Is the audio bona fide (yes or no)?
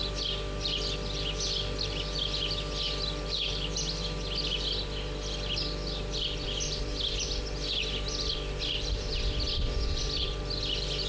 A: yes